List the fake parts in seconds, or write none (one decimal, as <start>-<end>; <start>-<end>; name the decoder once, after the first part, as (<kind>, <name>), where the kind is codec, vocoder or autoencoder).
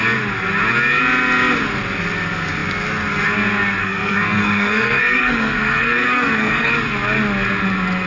3.8-6.7 (codec, SNAC)